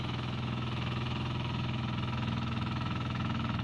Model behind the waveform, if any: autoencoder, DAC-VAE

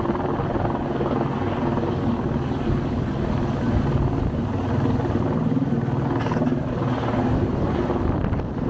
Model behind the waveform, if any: none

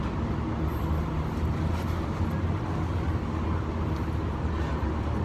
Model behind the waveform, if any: none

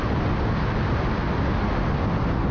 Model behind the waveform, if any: none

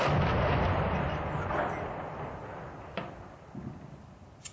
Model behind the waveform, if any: none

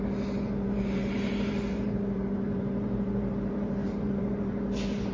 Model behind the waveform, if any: vocoder, BigVGAN v2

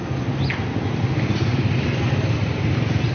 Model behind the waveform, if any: none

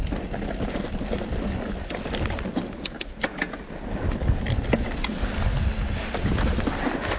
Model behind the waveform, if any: none